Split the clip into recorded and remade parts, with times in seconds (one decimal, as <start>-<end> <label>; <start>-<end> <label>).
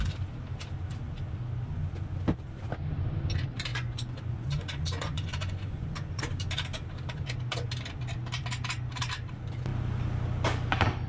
0.0-3.7 recorded; 3.7-6.2 remade; 6.2-11.1 recorded